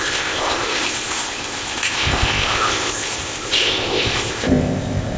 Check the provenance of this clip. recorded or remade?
remade